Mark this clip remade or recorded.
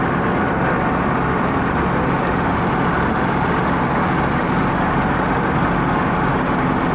recorded